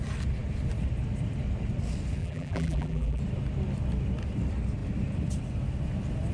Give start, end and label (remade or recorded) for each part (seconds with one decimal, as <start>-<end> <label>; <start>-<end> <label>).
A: 0.0-2.2 recorded; 2.2-3.2 remade; 3.2-6.3 recorded